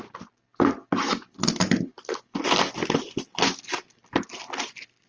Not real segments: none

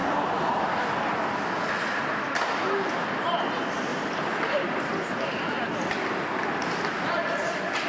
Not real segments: none

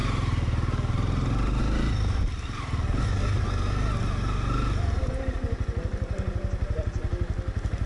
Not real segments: none

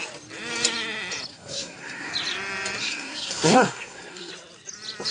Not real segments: 1.3-2.1 (codec, SNAC); 2.8-4.3

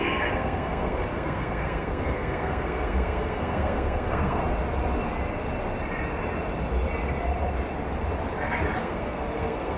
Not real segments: 0.0-4.4 (codec, SNAC); 8.8-9.8

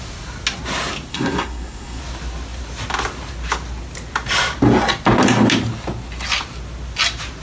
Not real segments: 1.1-2.0 (codec, SNAC)

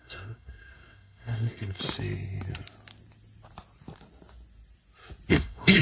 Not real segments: 0.0-1.8 (codec, SNAC); 5.3-5.8

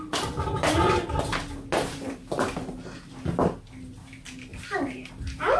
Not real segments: none